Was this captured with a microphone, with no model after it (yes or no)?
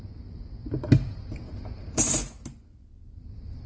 yes